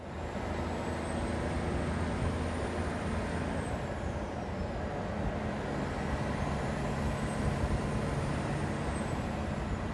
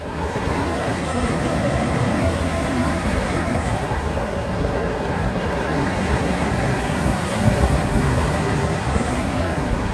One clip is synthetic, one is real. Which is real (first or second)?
first